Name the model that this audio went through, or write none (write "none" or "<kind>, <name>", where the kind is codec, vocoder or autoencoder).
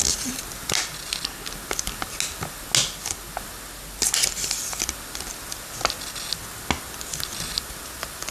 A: none